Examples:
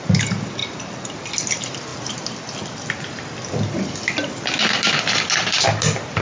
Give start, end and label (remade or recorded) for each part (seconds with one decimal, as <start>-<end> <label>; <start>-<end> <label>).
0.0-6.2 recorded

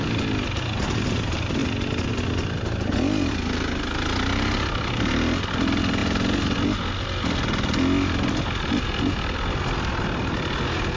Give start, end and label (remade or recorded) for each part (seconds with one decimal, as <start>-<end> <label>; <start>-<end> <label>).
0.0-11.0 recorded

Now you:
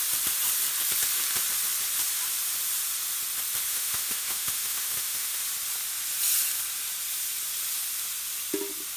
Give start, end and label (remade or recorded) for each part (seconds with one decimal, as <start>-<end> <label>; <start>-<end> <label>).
0.0-3.7 recorded; 3.7-5.4 remade; 5.4-9.0 recorded

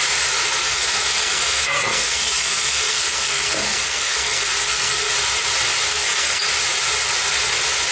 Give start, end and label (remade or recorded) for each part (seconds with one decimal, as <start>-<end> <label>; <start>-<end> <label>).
0.0-0.4 recorded; 0.4-5.1 remade; 5.1-5.9 recorded; 5.9-6.4 remade; 6.4-7.9 recorded